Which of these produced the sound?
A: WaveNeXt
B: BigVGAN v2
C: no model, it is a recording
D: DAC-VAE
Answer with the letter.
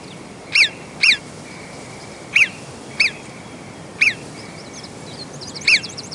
B